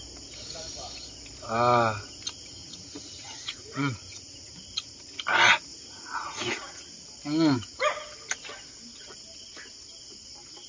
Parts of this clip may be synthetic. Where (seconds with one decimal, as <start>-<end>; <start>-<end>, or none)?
2.6-4.5; 5.7-6.9